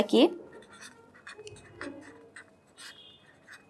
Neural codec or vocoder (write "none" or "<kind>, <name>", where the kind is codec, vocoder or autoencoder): none